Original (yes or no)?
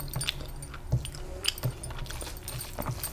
yes